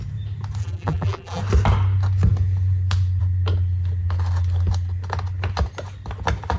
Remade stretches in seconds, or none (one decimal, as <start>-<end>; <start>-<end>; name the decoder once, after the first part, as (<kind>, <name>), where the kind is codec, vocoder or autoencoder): 0.6-1.4 (vocoder, BigVGAN v2)